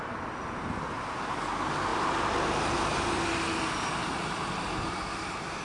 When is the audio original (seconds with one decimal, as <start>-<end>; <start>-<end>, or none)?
0.0-1.9; 3.1-4.0